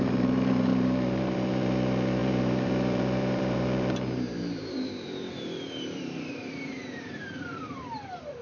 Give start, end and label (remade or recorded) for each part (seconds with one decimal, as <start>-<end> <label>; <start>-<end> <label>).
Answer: 0.0-8.4 remade